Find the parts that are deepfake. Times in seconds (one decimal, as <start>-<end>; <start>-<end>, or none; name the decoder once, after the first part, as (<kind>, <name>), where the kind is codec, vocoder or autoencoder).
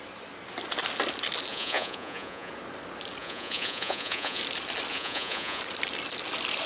1.5-2.5 (vocoder, Vocos); 3.2-4.4; 4.9-5.6